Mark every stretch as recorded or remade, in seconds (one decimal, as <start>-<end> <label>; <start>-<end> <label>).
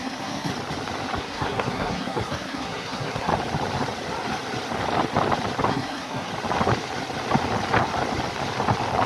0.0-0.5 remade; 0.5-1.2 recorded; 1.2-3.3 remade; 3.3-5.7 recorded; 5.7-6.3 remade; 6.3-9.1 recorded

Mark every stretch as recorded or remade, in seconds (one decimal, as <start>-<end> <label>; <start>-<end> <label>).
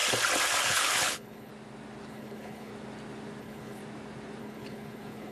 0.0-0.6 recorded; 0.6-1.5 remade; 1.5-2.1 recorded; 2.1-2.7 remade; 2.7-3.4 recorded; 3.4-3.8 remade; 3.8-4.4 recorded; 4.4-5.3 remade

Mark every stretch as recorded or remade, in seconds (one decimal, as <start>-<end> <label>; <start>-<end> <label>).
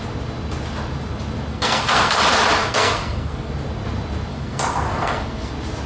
0.0-1.5 recorded; 1.5-2.2 remade; 2.2-2.6 recorded; 2.6-3.5 remade; 3.5-4.3 recorded; 4.3-5.5 remade; 5.5-5.9 recorded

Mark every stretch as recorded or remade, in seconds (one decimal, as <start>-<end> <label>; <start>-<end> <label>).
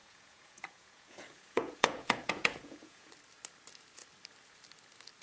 0.0-3.1 remade; 3.1-5.2 recorded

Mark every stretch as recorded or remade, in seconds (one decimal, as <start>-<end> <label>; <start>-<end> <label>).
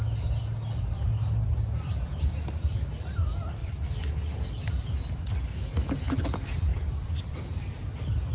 0.0-3.6 recorded; 3.6-4.3 remade; 4.3-6.7 recorded; 6.7-7.6 remade; 7.6-8.3 recorded